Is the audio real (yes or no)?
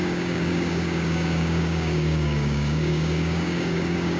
no